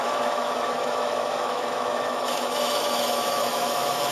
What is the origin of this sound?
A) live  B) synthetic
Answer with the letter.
B